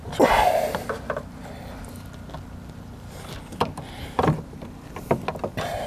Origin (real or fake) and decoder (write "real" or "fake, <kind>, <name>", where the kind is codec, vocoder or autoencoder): real